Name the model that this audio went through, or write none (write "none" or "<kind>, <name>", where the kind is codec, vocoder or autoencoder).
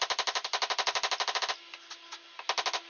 none